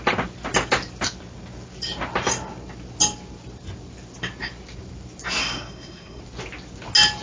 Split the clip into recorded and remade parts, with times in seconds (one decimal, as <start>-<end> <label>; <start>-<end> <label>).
0.0-5.4 recorded; 5.4-6.2 remade; 6.2-7.2 recorded